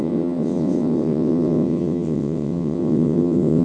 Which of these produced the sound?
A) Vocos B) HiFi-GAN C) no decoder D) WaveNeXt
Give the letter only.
D